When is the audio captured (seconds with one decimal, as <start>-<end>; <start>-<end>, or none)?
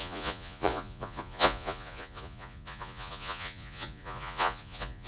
none